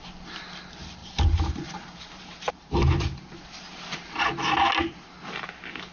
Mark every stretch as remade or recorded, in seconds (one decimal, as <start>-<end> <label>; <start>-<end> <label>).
0.0-1.0 recorded; 1.0-3.2 remade; 3.2-5.9 recorded

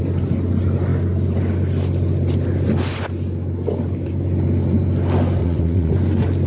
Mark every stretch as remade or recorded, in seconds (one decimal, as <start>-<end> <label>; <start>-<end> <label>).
0.0-5.4 recorded; 5.4-5.9 remade; 5.9-6.5 recorded

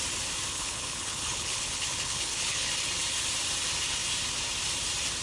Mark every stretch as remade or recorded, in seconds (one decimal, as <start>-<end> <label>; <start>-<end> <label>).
0.0-0.5 recorded; 0.5-2.7 remade; 2.7-5.2 recorded

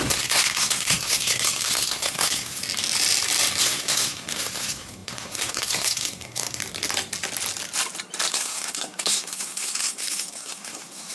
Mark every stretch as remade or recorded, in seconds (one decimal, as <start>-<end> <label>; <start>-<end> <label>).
0.0-2.6 remade; 2.6-3.6 recorded; 3.6-6.6 remade; 6.6-8.3 recorded; 8.3-11.1 remade

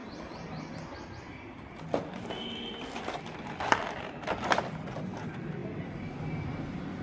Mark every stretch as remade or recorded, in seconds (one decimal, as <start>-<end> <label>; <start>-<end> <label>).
0.0-1.8 remade; 1.8-5.6 recorded; 5.6-6.1 remade; 6.1-7.0 recorded

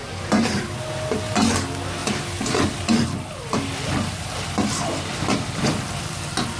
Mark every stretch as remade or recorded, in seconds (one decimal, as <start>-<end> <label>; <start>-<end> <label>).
0.0-2.0 recorded; 2.0-6.0 remade; 6.0-6.6 recorded

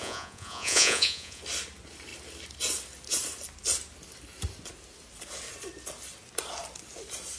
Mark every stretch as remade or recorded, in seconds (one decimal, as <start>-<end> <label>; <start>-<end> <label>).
0.0-1.4 remade; 1.4-7.4 recorded

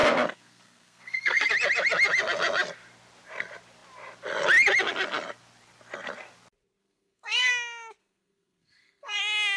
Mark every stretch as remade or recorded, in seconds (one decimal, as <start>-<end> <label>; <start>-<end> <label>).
0.0-1.5 remade; 1.5-6.8 recorded; 6.8-7.5 remade; 7.5-8.0 recorded; 8.0-9.2 remade; 9.2-9.6 recorded